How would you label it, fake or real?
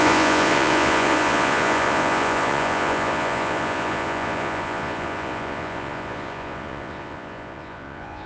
fake